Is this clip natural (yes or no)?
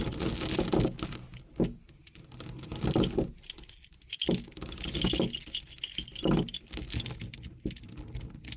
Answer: yes